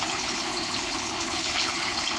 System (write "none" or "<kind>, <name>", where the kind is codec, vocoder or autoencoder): codec, HILCodec